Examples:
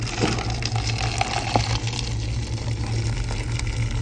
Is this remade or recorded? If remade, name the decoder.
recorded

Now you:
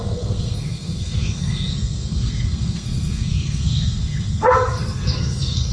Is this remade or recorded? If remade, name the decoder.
remade, codec, SNAC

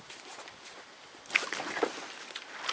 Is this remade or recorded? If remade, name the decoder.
recorded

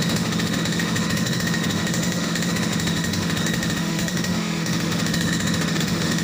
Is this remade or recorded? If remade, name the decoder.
remade, autoencoder, DAC-VAE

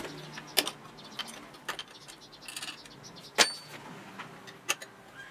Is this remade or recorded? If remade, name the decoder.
recorded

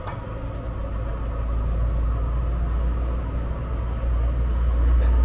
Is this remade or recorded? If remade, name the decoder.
recorded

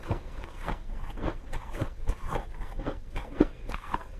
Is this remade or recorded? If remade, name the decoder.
remade, codec, SNAC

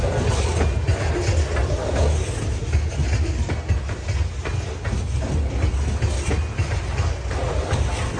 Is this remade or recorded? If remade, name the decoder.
recorded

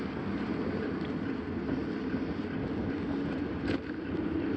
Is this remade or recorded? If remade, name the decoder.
recorded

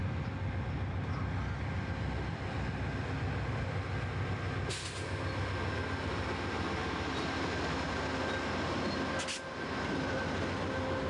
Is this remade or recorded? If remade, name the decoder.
recorded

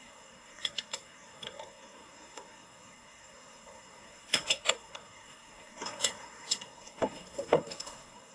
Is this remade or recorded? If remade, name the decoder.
remade, codec, SNAC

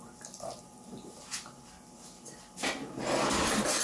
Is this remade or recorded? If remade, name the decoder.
recorded